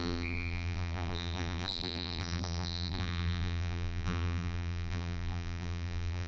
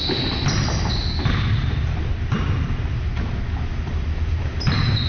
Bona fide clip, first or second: second